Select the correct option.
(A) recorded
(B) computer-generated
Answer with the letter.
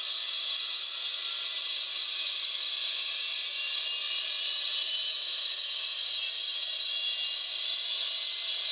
A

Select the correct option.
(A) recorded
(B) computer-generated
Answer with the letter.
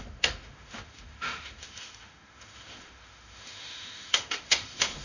B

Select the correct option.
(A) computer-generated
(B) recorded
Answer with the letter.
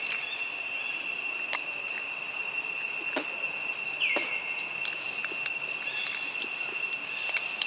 B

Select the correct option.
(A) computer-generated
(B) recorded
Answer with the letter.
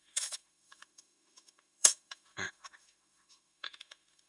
A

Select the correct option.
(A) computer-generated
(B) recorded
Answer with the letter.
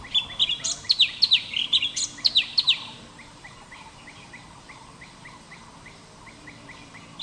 B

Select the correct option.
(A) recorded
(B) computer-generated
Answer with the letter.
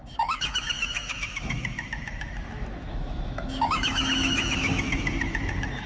B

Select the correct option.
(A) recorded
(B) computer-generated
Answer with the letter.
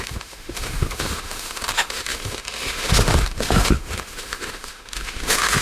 B